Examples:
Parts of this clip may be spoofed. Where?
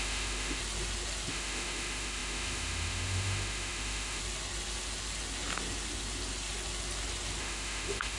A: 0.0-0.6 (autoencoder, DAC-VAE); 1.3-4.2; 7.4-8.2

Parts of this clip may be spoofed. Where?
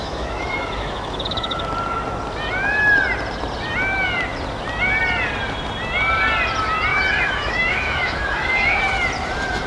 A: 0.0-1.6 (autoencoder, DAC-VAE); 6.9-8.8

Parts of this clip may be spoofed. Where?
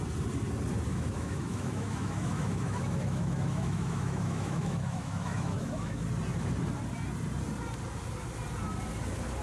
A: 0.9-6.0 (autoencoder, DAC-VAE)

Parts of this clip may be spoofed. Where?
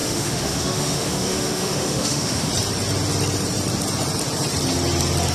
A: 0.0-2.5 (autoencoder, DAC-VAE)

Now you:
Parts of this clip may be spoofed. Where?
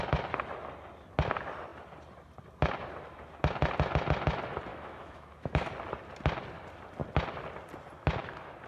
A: 4.7-5.7 (autoencoder, DAC-VAE)